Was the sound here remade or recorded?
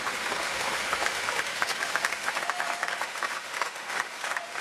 remade